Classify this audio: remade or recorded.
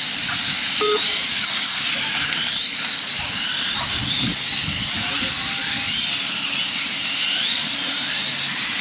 recorded